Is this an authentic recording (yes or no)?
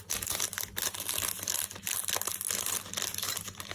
yes